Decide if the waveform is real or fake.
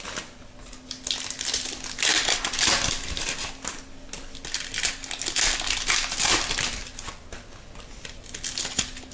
real